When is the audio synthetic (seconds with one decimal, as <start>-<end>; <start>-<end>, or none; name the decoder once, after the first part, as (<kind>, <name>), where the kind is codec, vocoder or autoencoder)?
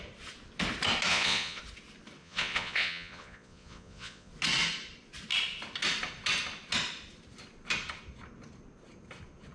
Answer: 1.1-1.6 (vocoder, Vocos); 2.2-4.3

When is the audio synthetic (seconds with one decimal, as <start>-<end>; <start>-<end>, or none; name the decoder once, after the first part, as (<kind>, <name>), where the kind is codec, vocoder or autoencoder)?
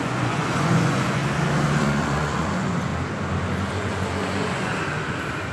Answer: 0.0-1.2 (vocoder, Vocos); 1.8-2.9; 3.7-4.7